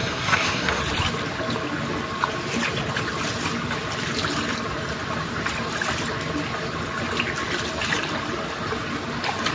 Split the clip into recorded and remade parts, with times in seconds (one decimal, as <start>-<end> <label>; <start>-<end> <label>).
0.0-0.8 remade; 0.8-9.5 recorded